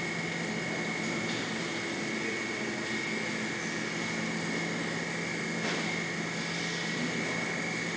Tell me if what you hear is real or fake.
real